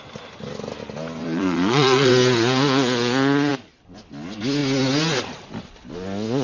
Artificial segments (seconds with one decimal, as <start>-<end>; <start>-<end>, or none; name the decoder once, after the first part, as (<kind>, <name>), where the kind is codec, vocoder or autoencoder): 1.2-2.1 (vocoder, Vocos)